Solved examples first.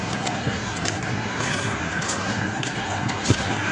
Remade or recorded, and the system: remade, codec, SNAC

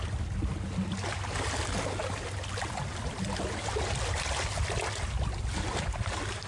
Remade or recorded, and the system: recorded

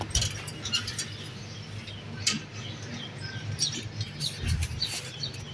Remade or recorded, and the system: recorded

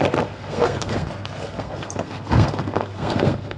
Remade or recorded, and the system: remade, codec, SNAC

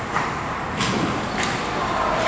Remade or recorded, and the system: recorded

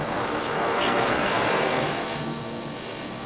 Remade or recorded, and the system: remade, codec, SNAC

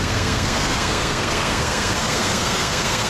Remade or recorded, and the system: remade, codec, SNAC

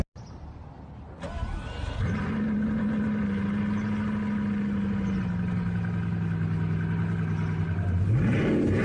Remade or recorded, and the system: recorded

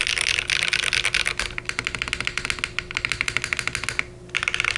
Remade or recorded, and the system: recorded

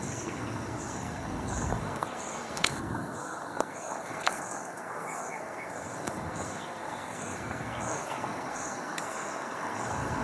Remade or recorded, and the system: remade, codec, SNAC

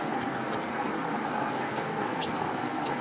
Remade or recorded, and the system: remade, codec, SNAC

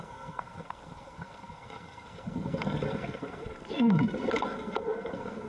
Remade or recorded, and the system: remade, codec, SNAC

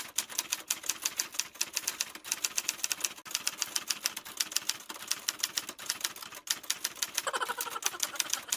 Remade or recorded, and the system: recorded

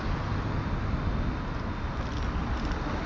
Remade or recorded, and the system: recorded